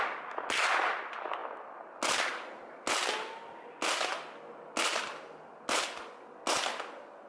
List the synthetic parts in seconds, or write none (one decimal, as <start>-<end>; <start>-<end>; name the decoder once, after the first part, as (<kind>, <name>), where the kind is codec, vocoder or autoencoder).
none